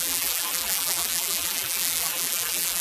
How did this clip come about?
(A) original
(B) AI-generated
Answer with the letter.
B